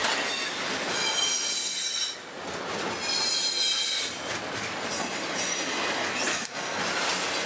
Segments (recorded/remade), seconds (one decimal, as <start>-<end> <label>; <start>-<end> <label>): 0.0-6.3 recorded; 6.3-6.8 remade; 6.8-7.5 recorded